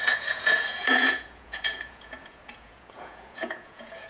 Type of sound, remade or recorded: remade